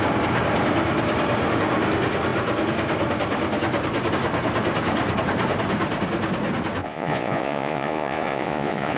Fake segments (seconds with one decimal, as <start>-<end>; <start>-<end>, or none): 6.8-9.0